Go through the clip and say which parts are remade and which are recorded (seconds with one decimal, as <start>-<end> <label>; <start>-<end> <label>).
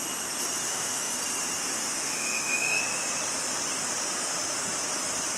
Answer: 0.0-0.7 recorded; 0.7-1.2 remade; 1.2-1.7 recorded; 1.7-2.8 remade; 2.8-5.4 recorded